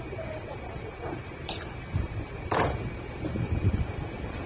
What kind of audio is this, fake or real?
fake